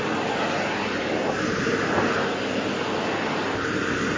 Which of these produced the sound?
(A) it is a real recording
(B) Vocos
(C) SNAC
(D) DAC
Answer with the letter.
A